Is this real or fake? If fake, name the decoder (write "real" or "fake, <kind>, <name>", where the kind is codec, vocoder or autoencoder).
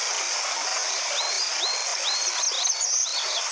real